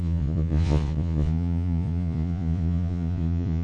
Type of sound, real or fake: fake